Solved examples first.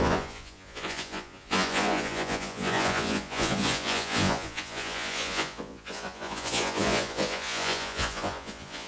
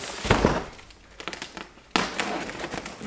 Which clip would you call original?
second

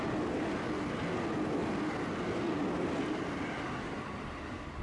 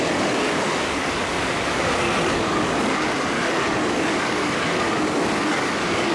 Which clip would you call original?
first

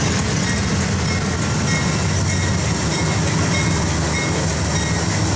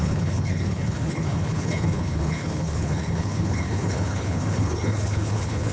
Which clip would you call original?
first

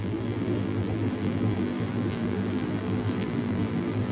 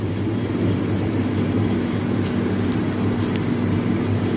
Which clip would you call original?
second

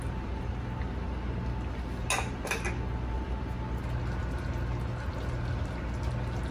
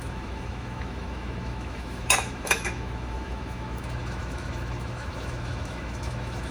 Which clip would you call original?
first